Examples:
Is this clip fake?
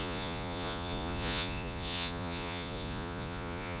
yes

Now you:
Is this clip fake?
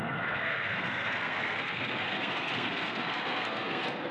yes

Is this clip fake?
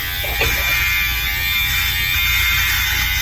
no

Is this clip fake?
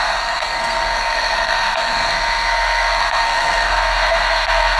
yes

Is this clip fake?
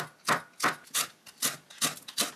yes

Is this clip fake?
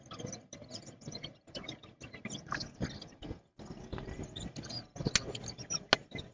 no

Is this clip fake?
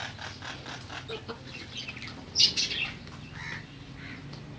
no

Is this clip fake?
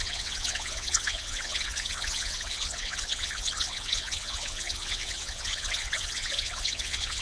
yes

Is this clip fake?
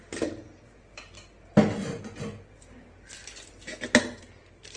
no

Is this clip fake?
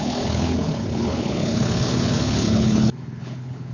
yes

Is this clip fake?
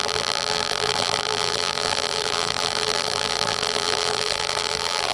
yes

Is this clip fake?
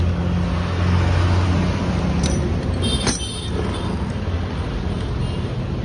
no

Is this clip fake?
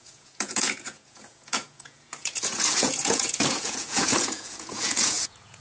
yes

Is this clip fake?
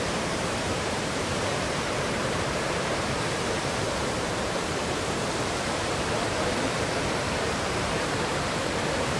yes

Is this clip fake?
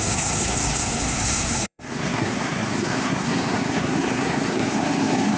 yes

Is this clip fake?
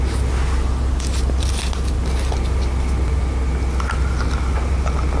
no